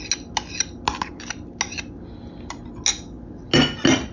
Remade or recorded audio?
recorded